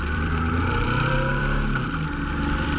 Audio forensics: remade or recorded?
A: remade